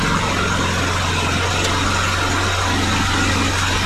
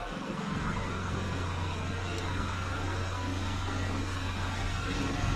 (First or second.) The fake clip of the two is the second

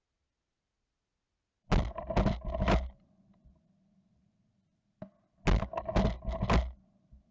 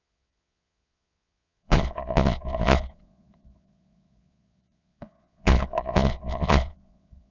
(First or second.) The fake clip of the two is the second